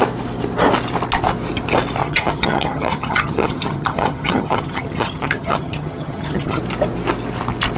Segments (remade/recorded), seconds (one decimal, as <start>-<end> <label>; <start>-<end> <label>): 0.0-2.0 recorded; 2.0-6.6 remade; 6.6-7.8 recorded